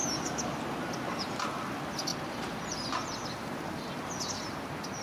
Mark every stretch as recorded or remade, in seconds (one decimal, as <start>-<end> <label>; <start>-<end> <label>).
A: 0.0-5.0 recorded

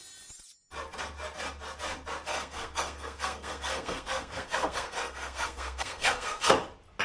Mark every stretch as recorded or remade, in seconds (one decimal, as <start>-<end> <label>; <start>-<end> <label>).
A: 0.0-2.3 recorded; 2.3-6.5 remade; 6.5-7.0 recorded